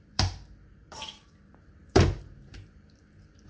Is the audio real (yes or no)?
no